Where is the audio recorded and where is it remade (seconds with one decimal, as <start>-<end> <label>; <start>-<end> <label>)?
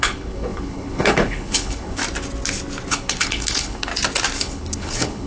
0.0-2.0 remade; 2.0-2.9 recorded; 2.9-3.9 remade; 3.9-4.4 recorded; 4.4-5.3 remade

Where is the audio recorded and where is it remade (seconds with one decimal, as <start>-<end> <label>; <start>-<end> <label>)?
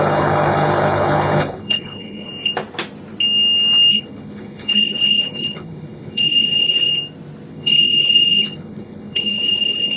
0.0-2.3 remade; 2.3-3.9 recorded; 3.9-6.9 remade; 6.9-7.5 recorded; 7.5-10.0 remade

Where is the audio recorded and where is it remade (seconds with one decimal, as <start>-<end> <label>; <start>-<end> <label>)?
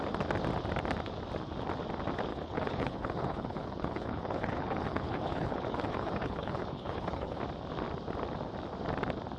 0.0-2.3 recorded; 2.3-7.4 remade; 7.4-9.4 recorded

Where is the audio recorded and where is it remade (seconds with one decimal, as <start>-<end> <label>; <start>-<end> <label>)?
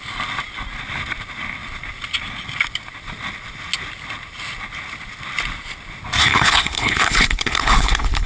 0.0-6.2 recorded; 6.2-8.3 remade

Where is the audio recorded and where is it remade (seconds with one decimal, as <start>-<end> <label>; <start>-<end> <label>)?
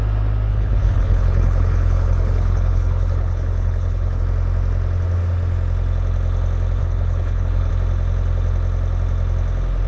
0.0-0.5 recorded; 0.5-4.2 remade; 4.2-6.8 recorded; 6.8-7.7 remade; 7.7-9.9 recorded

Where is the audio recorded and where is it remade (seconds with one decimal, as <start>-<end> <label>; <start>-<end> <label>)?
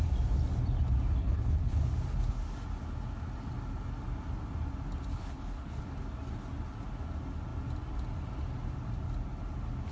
0.0-1.2 recorded; 1.2-1.8 remade; 1.8-5.1 recorded; 5.1-5.8 remade; 5.8-9.9 recorded